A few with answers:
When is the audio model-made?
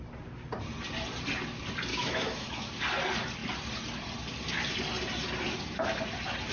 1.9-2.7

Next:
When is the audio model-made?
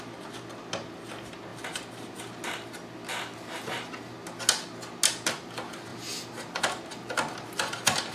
none